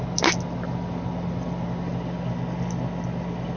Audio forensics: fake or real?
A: real